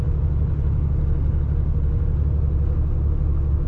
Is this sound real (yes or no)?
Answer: yes